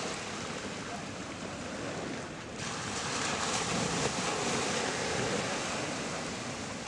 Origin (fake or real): real